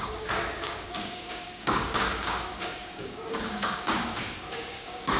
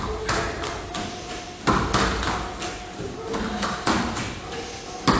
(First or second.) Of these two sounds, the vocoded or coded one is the first